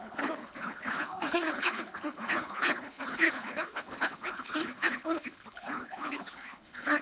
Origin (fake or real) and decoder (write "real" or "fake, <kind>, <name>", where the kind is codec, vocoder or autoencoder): fake, codec, HILCodec